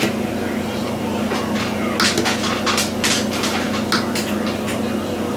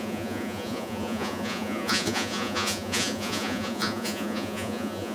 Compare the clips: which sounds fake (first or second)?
second